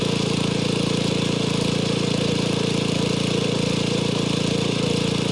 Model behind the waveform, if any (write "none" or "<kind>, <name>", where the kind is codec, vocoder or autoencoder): none